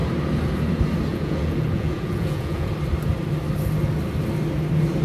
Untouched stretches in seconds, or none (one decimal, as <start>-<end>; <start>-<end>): 0.0-1.1; 2.7-5.0